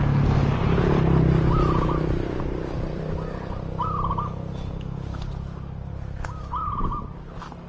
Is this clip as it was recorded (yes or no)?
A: yes